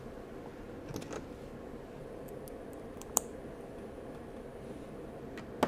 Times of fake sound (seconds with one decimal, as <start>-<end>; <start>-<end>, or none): 2.0-5.2